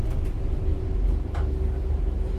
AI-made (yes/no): no